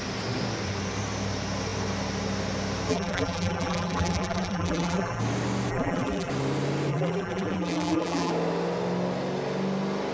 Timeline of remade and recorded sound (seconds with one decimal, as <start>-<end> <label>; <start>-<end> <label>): 0.0-2.9 recorded; 2.9-5.2 remade; 5.2-5.7 recorded; 5.7-6.3 remade; 6.3-6.9 recorded; 6.9-8.3 remade; 8.3-10.1 recorded